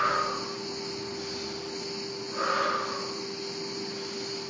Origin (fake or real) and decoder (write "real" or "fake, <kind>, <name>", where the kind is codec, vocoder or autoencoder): real